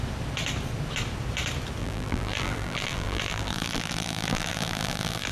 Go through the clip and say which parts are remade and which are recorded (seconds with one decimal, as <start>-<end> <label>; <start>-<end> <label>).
0.0-1.8 recorded; 1.8-5.3 remade